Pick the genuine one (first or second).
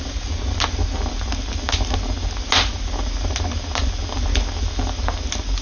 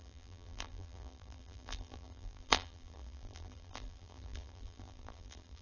first